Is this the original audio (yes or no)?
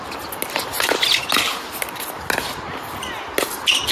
yes